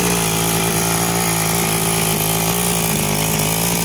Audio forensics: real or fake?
real